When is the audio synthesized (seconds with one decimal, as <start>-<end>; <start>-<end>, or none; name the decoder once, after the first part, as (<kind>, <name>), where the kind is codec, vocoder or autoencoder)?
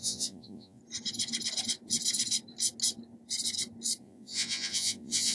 0.0-0.8 (vocoder, Vocos); 4.0-5.3